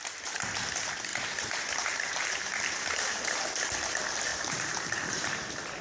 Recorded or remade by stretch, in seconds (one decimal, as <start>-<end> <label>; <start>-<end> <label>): 0.0-1.1 recorded; 1.1-3.4 remade; 3.4-4.3 recorded; 4.3-5.3 remade; 5.3-5.8 recorded